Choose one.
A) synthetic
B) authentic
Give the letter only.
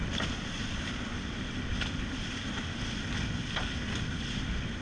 B